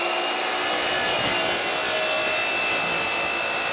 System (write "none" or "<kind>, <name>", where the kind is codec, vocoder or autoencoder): none